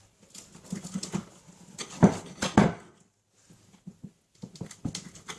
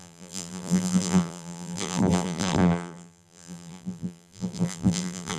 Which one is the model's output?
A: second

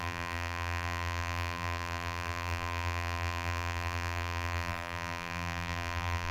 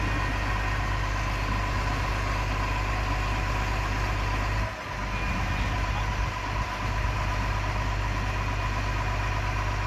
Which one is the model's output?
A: first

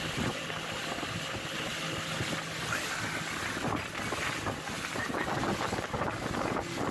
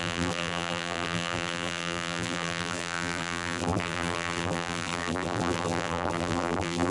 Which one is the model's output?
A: second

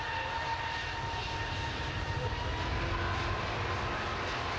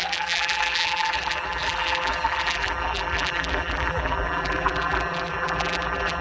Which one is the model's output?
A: second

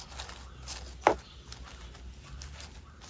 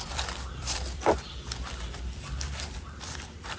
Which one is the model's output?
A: second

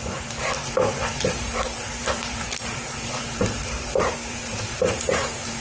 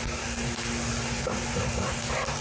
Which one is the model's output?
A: first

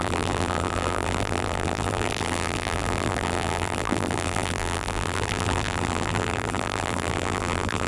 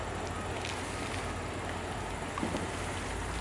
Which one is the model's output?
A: first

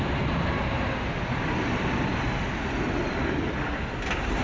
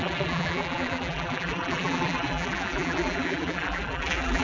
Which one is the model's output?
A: second